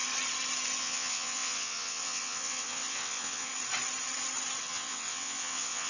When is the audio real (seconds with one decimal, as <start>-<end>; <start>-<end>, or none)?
0.0-0.8; 3.5-4.6